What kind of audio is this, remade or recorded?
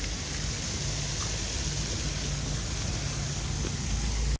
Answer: recorded